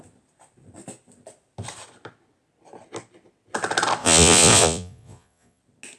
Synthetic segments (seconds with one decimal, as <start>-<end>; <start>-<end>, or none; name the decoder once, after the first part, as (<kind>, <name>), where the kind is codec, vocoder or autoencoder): 4.0-5.6 (vocoder, Vocos)